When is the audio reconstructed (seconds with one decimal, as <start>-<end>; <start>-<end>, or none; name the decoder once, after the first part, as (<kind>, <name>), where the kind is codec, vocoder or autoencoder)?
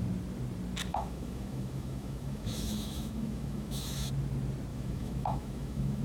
0.9-4.1 (autoencoder, DAC-VAE); 4.7-6.0